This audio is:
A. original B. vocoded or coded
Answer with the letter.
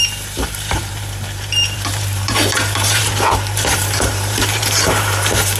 B